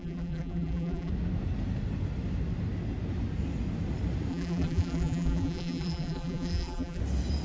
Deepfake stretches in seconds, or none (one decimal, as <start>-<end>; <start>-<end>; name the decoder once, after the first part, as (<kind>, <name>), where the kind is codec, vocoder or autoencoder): 0.0-1.1 (vocoder, BigVGAN v2); 4.3-7.0